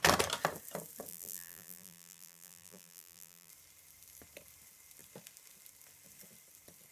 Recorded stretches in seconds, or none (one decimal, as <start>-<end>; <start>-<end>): 0.0-1.1; 3.5-6.9